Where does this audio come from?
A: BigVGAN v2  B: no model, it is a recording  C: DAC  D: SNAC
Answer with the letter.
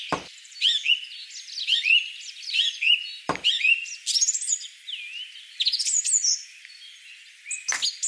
B